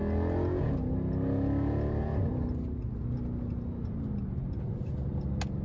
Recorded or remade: recorded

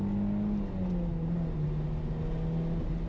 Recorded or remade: recorded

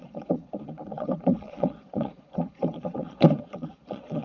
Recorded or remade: remade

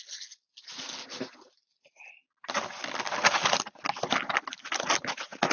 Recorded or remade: recorded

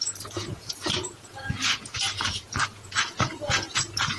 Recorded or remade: remade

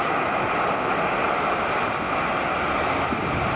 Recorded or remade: recorded